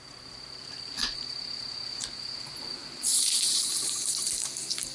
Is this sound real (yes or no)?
no